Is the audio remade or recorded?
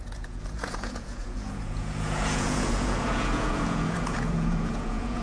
remade